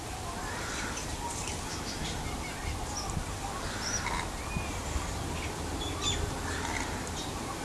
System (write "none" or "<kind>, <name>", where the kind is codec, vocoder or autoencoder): none